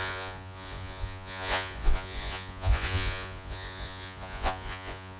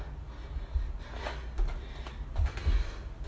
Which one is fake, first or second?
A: first